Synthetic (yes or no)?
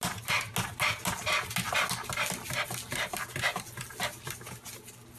no